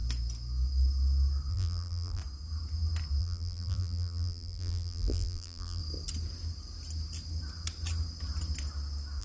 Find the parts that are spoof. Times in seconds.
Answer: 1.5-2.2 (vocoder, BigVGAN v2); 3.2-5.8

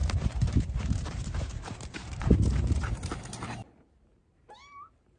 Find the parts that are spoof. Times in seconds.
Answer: 0.0-3.1 (vocoder, BigVGAN v2)

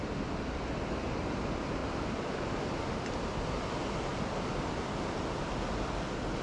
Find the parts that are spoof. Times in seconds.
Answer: 1.8-3.5 (vocoder, BigVGAN v2); 4.1-5.4